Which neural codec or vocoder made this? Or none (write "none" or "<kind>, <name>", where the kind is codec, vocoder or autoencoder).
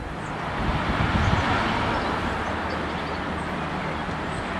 none